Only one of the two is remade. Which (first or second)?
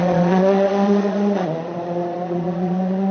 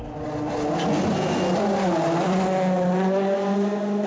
first